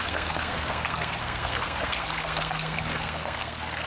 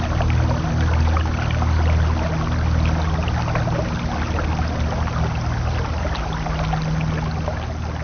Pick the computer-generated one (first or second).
first